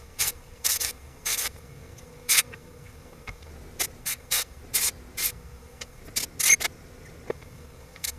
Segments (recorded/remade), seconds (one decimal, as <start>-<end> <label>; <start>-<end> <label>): 0.0-3.5 remade; 3.5-4.0 recorded; 4.0-4.6 remade; 4.6-5.3 recorded; 5.3-6.0 remade; 6.0-7.3 recorded; 7.3-8.2 remade